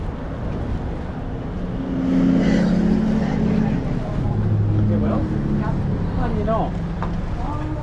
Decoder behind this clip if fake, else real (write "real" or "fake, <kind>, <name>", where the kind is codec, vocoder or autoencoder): real